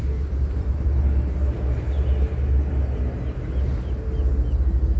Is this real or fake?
real